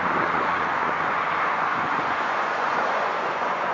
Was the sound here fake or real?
fake